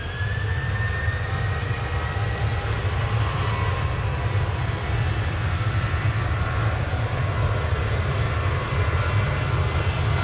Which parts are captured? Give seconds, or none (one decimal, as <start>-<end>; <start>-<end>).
0.0-10.2